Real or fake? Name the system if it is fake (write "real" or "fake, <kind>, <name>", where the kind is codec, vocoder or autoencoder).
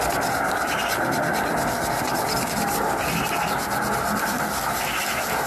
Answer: real